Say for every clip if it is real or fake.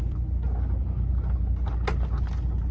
real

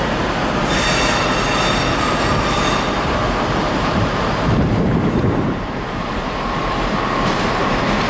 fake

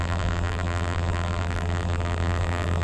fake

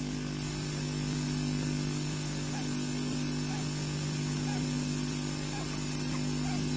real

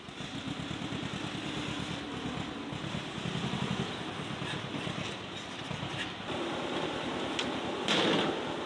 real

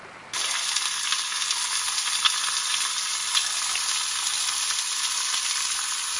real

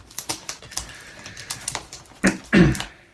fake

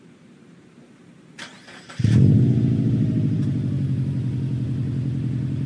fake